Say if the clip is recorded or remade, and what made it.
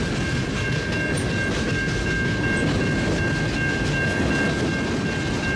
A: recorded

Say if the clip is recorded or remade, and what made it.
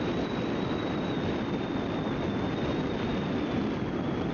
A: recorded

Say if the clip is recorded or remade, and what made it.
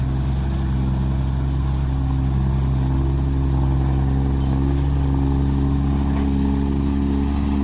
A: recorded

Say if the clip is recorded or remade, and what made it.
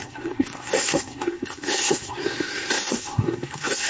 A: remade, codec, SNAC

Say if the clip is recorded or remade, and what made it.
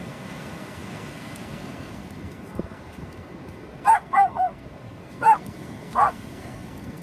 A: remade, codec, SNAC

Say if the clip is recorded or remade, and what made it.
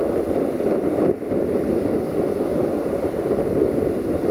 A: recorded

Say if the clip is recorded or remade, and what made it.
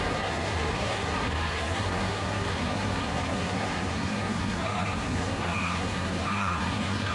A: remade, codec, SNAC